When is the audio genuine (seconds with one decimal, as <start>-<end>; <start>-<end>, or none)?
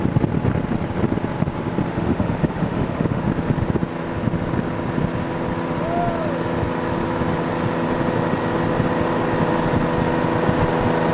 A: 0.0-1.9; 3.2-11.1